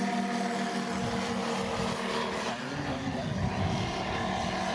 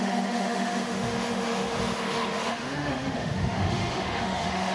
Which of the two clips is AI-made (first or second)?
second